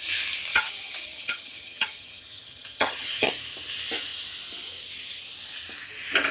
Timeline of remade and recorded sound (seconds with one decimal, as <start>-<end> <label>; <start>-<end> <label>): 0.0-0.5 recorded; 0.5-3.3 remade; 3.3-6.3 recorded